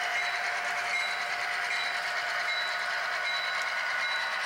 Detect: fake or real real